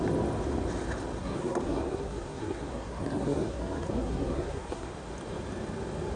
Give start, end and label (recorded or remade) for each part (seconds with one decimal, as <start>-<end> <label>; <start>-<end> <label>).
0.0-1.2 recorded; 1.2-4.9 remade; 4.9-6.2 recorded